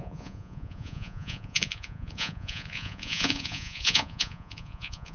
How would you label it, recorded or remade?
remade